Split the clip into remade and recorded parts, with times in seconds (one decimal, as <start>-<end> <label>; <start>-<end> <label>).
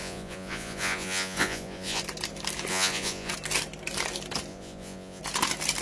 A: 0.0-2.0 remade; 2.0-2.7 recorded; 2.7-3.3 remade; 3.3-4.5 recorded; 4.5-5.2 remade; 5.2-5.8 recorded